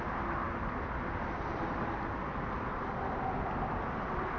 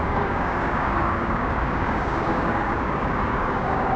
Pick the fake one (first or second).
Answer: second